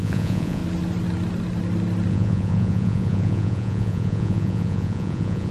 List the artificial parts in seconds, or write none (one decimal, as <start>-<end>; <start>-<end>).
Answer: 0.0-0.6; 2.1-5.5